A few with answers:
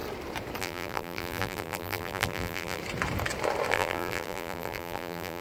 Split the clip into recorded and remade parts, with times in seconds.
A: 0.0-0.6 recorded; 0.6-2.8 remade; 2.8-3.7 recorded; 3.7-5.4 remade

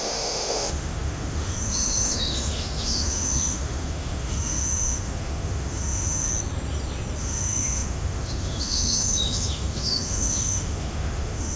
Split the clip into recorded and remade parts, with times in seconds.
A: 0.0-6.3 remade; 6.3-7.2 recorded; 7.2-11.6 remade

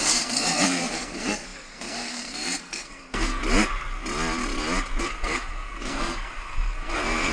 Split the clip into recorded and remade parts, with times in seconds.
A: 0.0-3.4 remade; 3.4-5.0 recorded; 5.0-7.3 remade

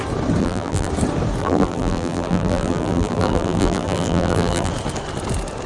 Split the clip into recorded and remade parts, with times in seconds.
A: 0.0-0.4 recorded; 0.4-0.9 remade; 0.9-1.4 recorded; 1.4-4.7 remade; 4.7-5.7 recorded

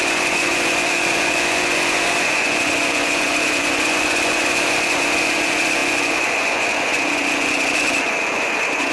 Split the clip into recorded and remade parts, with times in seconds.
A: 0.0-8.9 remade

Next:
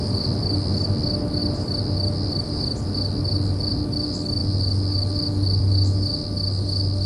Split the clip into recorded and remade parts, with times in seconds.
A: 0.0-7.1 recorded